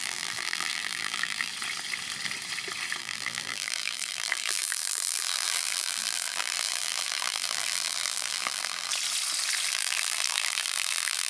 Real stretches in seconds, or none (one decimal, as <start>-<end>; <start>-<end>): 1.5-3.0; 8.9-9.7